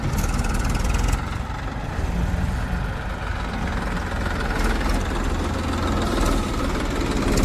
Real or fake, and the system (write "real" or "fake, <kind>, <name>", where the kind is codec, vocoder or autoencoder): real